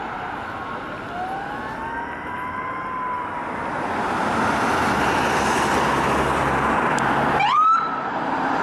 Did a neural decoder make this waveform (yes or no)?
no